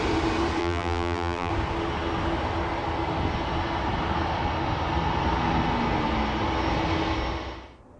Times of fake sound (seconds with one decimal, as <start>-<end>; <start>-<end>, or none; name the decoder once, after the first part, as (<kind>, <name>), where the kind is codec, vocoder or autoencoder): 0.6-1.5 (vocoder, BigVGAN v2)